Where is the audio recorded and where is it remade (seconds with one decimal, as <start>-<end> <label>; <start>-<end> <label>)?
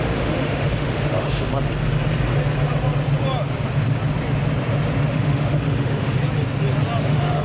0.0-1.5 remade; 1.5-5.1 recorded; 5.1-6.2 remade; 6.2-7.0 recorded; 7.0-7.4 remade